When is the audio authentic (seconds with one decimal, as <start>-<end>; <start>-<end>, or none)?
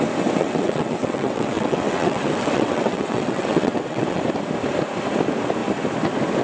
0.0-0.4; 4.2-6.4